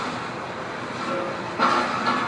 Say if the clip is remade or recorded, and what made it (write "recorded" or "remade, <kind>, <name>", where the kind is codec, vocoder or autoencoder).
recorded